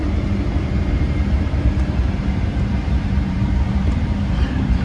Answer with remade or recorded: remade